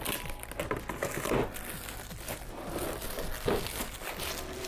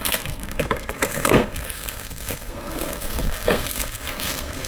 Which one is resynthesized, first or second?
second